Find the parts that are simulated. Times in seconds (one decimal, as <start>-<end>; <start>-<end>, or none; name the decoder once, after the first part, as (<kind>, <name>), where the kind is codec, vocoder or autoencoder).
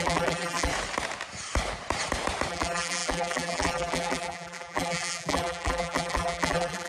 0.0-0.7 (vocoder, BigVGAN v2); 2.5-6.9